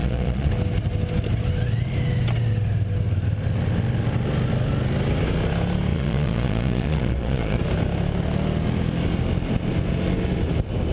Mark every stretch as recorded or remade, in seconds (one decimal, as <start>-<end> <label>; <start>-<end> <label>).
0.0-0.5 remade; 0.5-5.9 recorded; 5.9-7.6 remade; 7.6-10.9 recorded